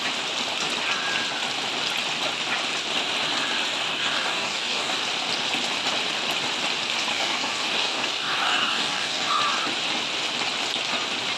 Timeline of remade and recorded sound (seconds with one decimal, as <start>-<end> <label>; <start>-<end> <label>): 0.0-3.9 recorded; 3.9-5.0 remade; 5.0-7.1 recorded; 7.1-9.4 remade; 9.4-11.4 recorded